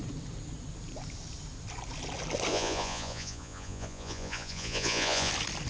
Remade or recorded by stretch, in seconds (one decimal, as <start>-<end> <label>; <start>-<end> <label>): 0.0-2.5 recorded; 2.5-5.3 remade; 5.3-5.7 recorded